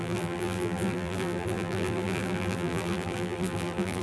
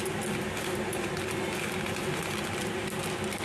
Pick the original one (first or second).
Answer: second